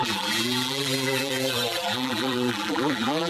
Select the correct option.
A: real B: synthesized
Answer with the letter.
B